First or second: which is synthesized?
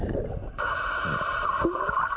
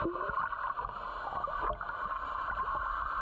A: first